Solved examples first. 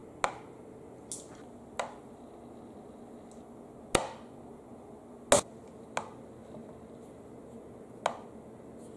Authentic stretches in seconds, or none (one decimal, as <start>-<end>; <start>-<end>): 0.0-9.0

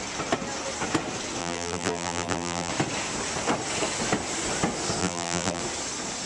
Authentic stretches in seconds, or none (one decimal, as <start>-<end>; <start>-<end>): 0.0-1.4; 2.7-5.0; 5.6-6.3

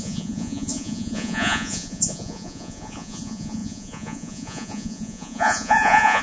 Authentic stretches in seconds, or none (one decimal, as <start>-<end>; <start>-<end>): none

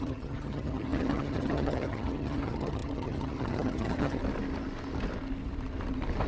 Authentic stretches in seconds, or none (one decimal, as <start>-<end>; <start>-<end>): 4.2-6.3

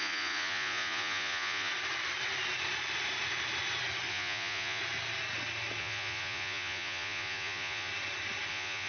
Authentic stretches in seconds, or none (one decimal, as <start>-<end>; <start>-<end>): 1.7-4.1; 4.8-5.8; 7.9-8.5